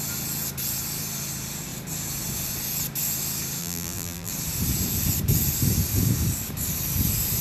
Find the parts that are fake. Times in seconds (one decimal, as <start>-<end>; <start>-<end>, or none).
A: 3.6-4.3